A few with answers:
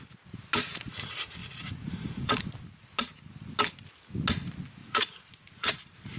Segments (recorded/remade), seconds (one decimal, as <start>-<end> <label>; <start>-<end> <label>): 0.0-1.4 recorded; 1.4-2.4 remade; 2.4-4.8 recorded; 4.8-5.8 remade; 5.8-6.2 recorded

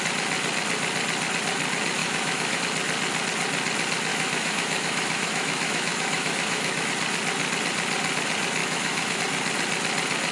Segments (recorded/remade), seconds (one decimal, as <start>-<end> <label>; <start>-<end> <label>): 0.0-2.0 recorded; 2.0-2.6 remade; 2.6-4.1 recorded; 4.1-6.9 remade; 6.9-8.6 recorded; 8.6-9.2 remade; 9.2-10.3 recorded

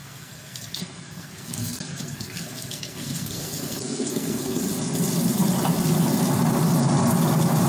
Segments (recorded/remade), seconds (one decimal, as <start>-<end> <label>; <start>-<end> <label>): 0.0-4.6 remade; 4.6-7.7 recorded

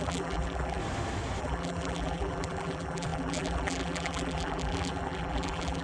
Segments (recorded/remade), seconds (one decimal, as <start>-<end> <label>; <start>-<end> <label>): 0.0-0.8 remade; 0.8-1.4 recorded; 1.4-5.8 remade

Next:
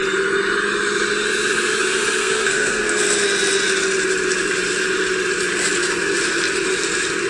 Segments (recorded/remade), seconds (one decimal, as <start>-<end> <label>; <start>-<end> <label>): 0.0-2.2 recorded; 2.2-3.0 remade; 3.0-7.3 recorded

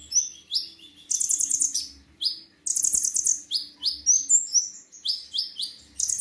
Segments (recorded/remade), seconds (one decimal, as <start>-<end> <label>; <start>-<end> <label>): 0.0-6.2 recorded